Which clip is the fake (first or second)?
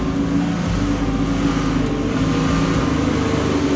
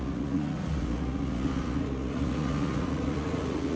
second